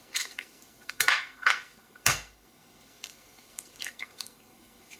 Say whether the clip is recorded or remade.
remade